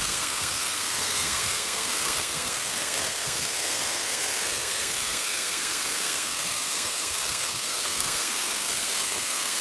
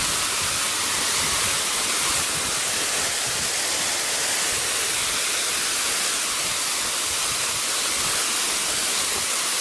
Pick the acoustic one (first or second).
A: second